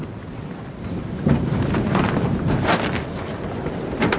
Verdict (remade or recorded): recorded